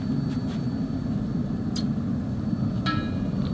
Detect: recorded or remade recorded